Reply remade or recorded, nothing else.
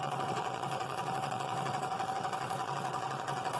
remade